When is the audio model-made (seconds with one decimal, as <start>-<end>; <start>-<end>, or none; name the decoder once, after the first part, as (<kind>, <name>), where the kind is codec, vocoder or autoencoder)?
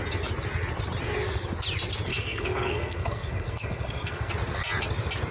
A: 2.1-4.3 (codec, SNAC)